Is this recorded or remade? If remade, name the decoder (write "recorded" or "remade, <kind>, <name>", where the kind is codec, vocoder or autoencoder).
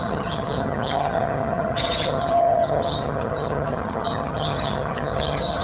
remade, vocoder, HiFi-GAN